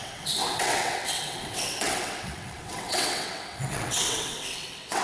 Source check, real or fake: fake